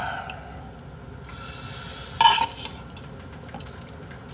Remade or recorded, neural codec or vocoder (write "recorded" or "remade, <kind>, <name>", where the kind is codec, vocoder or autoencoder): recorded